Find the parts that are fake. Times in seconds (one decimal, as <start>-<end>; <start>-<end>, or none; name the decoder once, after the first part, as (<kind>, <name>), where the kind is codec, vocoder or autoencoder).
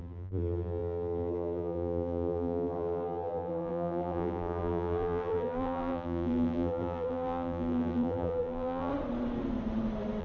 0.0-8.9 (vocoder, BigVGAN v2)